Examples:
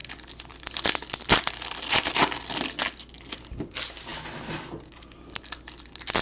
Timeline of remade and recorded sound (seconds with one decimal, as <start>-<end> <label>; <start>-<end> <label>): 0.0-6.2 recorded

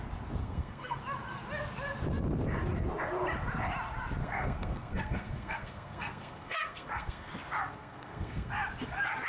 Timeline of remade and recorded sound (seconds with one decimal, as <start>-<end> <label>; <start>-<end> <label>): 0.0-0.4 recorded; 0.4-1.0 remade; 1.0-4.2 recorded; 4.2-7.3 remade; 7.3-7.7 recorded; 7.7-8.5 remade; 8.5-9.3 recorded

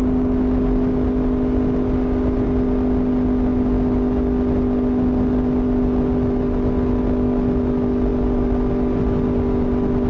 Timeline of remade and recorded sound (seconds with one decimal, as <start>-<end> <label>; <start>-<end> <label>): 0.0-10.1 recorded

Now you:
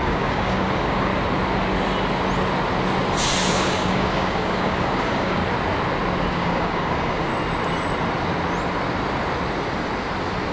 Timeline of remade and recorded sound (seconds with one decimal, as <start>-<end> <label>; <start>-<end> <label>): 0.0-1.1 remade; 1.1-3.5 recorded; 3.5-5.4 remade; 5.4-6.3 recorded; 6.3-7.3 remade; 7.3-10.5 recorded

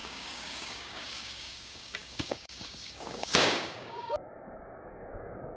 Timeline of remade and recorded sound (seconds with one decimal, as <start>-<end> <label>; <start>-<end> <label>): 0.0-5.6 remade

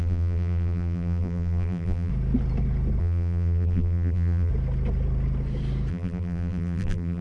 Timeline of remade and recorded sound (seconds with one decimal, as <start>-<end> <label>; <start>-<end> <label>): 0.0-2.1 remade; 2.1-3.0 recorded; 3.0-4.5 remade; 4.5-5.9 recorded; 5.9-7.2 remade

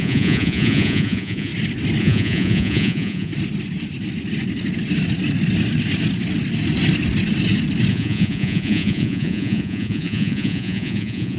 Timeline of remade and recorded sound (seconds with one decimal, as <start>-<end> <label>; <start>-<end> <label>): 0.0-1.5 remade; 1.5-2.0 recorded; 2.0-3.3 remade; 3.3-7.9 recorded; 7.9-11.4 remade

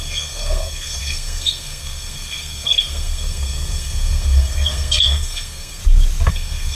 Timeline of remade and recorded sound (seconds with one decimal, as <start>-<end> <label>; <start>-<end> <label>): 0.0-5.8 remade; 5.8-6.3 recorded; 6.3-6.7 remade